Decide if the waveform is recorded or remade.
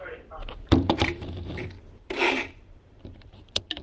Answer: remade